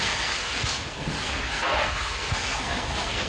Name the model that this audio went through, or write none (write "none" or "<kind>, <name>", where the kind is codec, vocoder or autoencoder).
codec, SNAC